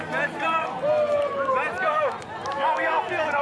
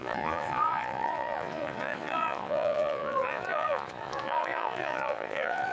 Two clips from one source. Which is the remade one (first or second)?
second